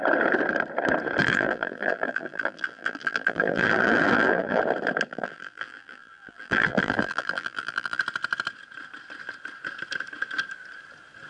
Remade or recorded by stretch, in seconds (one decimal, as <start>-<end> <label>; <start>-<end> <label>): 0.0-1.2 recorded; 1.2-4.6 remade; 4.6-5.1 recorded; 5.1-8.0 remade; 8.0-11.3 recorded